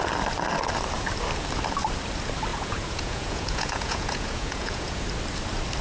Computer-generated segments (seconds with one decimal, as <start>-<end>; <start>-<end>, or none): 2.5-5.0